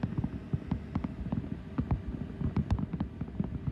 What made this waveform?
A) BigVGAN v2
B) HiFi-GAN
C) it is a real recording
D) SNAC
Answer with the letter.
C